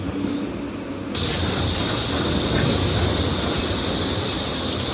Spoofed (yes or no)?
no